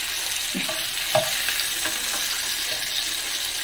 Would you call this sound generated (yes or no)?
no